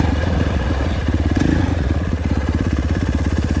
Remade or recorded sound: remade